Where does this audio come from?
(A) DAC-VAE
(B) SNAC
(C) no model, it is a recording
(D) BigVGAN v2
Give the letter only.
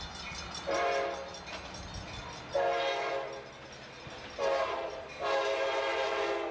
C